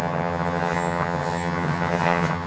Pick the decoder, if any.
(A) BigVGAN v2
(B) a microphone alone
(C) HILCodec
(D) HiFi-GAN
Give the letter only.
D